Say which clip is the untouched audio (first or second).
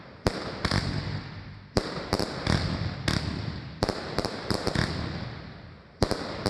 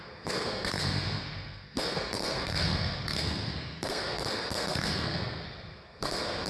first